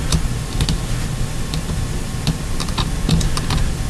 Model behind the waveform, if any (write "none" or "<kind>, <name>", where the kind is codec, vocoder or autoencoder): none